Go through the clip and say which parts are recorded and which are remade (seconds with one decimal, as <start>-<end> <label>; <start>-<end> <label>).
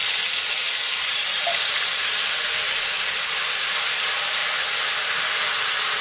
0.0-4.4 remade; 4.4-5.2 recorded; 5.2-6.0 remade